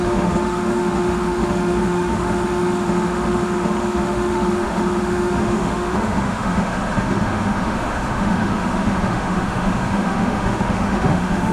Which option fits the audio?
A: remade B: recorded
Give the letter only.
A